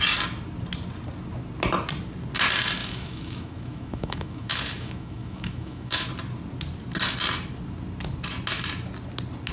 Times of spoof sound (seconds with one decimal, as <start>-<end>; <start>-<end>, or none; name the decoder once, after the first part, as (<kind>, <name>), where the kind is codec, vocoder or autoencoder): 2.8-6.1 (autoencoder, DAC-VAE)